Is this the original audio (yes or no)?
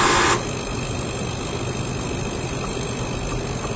yes